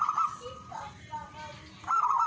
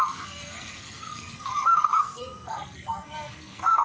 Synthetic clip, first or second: second